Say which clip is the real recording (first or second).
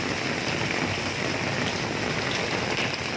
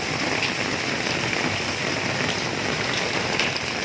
first